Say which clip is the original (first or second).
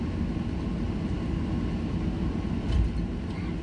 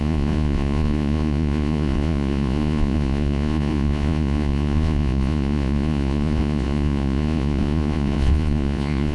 first